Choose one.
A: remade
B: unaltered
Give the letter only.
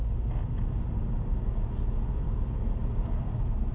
B